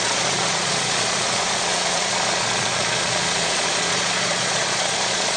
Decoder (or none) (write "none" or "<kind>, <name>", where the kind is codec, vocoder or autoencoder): vocoder, Vocos